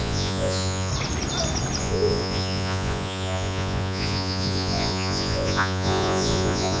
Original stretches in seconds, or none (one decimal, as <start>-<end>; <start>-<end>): 0.9-1.8

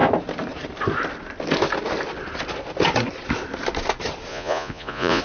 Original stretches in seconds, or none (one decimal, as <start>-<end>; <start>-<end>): 0.0-4.3